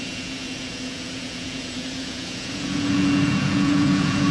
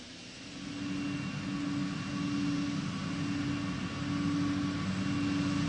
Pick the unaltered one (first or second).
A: second